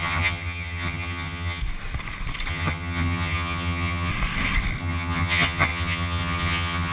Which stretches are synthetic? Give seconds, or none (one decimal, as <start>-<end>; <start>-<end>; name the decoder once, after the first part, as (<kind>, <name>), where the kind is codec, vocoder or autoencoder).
0.0-1.6 (vocoder, HiFi-GAN); 2.5-4.1; 4.8-6.9